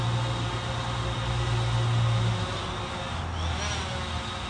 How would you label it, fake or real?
real